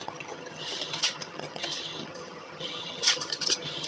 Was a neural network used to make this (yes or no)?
yes